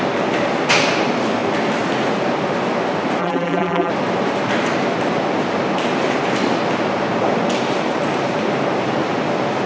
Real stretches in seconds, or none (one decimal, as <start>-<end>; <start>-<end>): 0.0-3.2; 3.9-9.7